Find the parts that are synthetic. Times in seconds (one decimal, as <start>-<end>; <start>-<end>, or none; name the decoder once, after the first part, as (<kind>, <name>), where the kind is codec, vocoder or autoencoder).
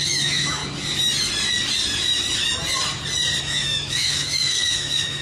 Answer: 0.0-0.6 (autoencoder, DAC-VAE); 3.4-5.2